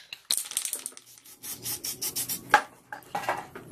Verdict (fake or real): real